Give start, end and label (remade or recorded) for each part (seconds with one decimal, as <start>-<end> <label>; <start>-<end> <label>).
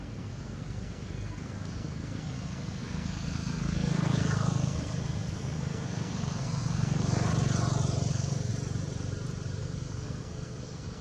0.0-7.3 remade; 7.3-8.1 recorded; 8.1-8.5 remade; 8.5-9.6 recorded; 9.6-11.0 remade